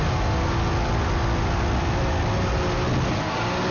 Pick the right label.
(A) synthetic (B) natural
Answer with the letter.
B